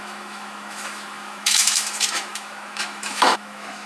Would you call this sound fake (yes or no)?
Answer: yes